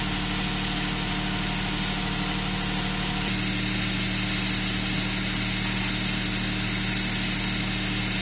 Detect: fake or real real